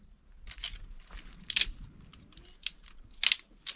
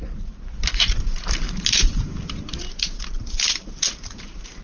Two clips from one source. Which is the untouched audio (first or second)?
first